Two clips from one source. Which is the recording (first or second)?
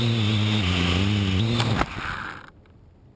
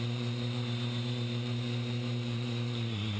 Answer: first